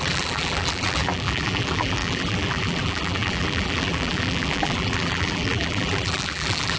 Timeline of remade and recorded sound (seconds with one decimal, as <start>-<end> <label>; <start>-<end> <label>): 0.0-6.8 remade